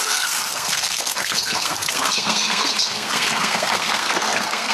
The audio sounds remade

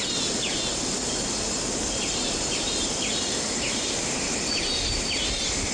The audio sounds recorded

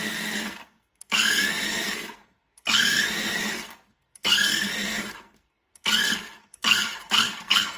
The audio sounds remade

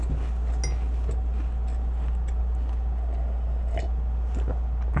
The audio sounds recorded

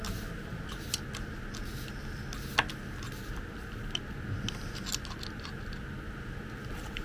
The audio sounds recorded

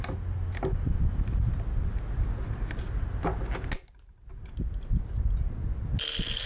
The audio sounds recorded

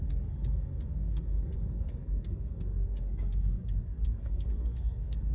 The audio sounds remade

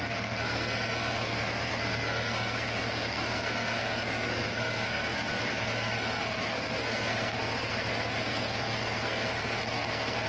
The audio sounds remade